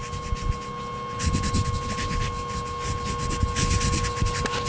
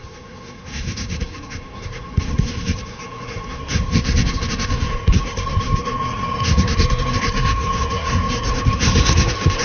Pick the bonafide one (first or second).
first